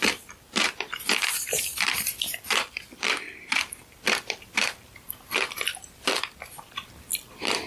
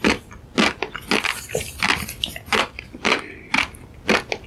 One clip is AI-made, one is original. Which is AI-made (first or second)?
first